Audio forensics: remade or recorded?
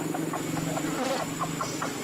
recorded